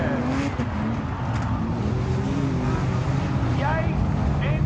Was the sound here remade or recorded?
recorded